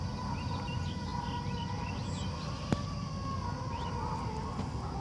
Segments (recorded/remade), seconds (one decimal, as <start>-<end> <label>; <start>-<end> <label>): 0.0-5.0 recorded